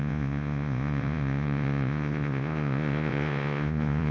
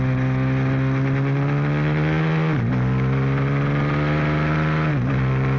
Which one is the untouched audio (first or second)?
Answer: second